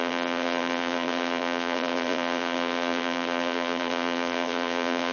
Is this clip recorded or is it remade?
remade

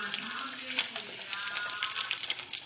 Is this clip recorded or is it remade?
recorded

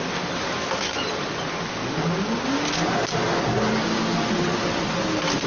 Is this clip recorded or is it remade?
recorded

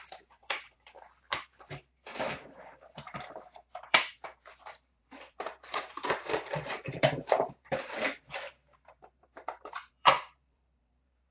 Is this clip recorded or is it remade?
remade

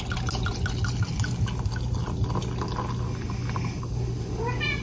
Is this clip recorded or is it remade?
recorded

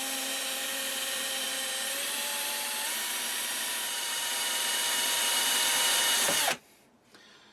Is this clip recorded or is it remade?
remade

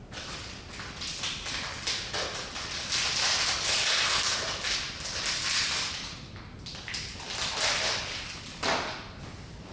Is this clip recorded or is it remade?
recorded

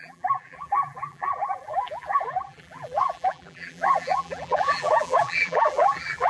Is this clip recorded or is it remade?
remade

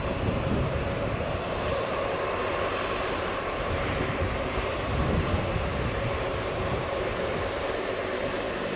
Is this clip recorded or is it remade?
remade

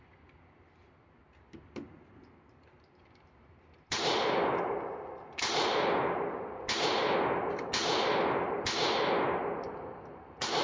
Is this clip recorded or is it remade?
recorded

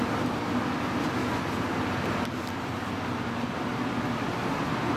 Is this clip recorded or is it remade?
recorded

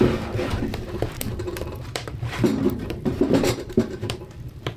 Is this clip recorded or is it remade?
remade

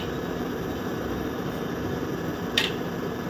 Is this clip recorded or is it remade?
remade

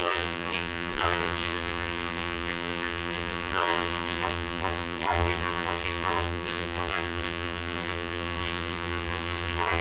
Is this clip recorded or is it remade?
remade